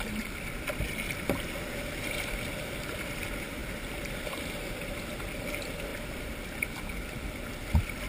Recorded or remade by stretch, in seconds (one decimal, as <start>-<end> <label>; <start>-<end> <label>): 0.0-8.1 recorded